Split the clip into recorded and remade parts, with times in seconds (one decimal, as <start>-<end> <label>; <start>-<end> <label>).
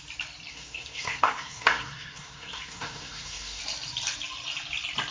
0.0-0.5 recorded; 0.5-3.6 remade; 3.6-5.1 recorded